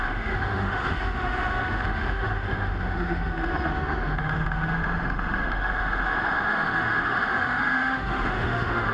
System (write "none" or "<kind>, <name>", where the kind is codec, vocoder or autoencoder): autoencoder, DAC-VAE